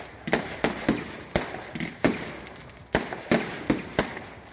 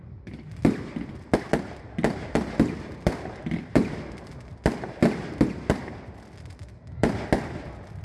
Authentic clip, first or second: first